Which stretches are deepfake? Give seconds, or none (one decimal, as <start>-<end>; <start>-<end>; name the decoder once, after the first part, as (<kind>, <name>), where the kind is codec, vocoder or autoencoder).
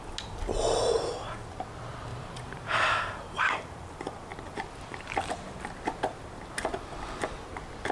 2.1-3.9 (vocoder, BigVGAN v2)